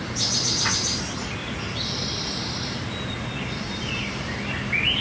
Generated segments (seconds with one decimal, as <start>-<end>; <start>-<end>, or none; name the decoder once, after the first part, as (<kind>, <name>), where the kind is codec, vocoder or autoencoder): none